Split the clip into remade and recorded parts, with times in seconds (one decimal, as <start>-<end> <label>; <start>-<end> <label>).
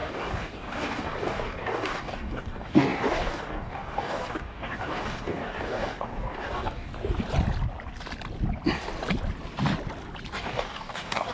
0.0-6.9 remade; 6.9-10.3 recorded; 10.3-11.3 remade